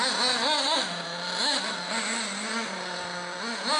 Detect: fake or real real